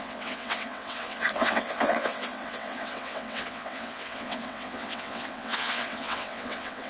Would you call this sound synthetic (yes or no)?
yes